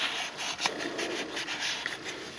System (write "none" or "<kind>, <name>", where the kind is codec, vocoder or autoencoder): none